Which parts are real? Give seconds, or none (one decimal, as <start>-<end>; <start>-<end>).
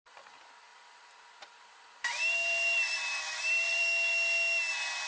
0.0-0.7; 3.8-5.1